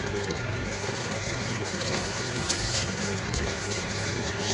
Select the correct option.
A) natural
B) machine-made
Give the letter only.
B